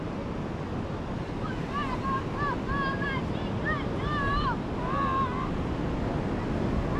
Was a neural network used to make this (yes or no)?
no